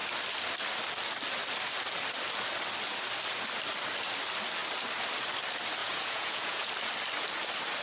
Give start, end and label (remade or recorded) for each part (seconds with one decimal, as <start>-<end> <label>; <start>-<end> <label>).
0.0-5.8 recorded; 5.8-6.7 remade; 6.7-7.8 recorded